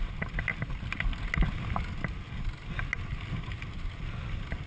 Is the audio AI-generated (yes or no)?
no